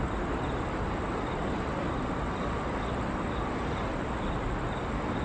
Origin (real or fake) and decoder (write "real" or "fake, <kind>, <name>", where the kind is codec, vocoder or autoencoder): real